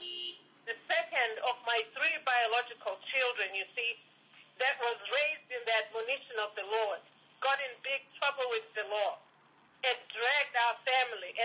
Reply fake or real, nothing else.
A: real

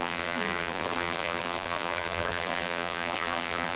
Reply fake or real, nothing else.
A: fake